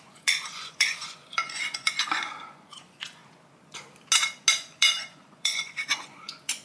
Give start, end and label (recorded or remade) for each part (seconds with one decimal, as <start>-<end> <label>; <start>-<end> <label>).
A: 0.0-3.2 remade; 3.2-4.5 recorded; 4.5-6.6 remade